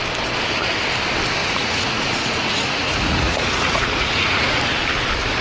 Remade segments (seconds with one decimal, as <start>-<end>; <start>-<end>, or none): 1.4-4.6